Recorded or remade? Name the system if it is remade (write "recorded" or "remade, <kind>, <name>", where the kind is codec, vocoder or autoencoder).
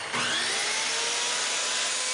recorded